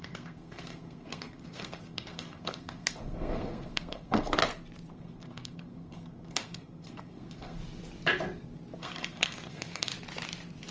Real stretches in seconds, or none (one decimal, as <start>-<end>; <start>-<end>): 4.4-4.9; 7.6-8.8; 9.9-10.7